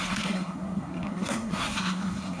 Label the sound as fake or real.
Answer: fake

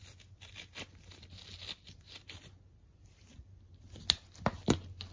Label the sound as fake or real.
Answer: real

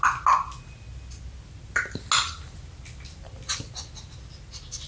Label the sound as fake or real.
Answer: real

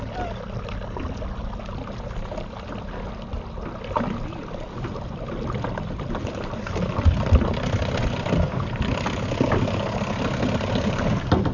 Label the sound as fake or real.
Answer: real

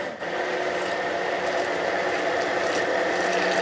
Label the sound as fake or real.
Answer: real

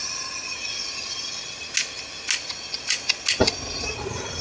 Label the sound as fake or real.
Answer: real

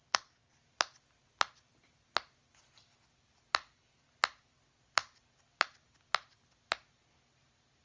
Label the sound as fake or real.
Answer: real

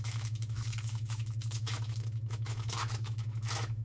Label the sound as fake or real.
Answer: fake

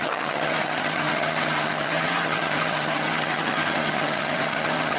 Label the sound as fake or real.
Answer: fake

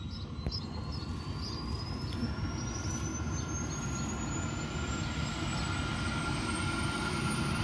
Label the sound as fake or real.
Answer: real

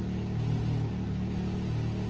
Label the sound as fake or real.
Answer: real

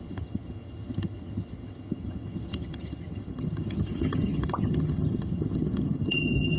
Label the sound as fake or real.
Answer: fake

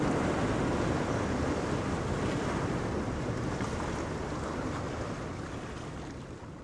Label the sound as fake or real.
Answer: real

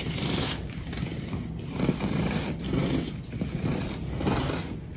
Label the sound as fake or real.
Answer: real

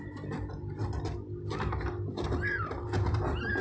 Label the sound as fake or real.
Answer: real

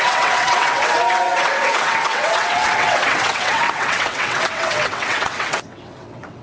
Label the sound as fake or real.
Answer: fake